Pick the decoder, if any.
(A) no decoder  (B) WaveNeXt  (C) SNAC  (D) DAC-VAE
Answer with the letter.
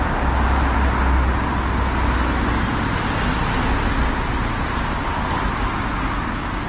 A